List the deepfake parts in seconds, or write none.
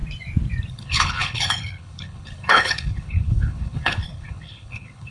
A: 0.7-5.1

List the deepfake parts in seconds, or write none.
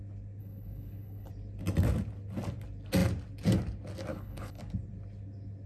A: 0.4-1.3; 4.1-4.6